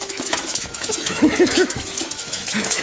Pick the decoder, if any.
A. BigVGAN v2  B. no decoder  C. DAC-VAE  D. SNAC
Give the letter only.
C